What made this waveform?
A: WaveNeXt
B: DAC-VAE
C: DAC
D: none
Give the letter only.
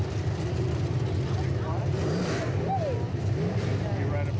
D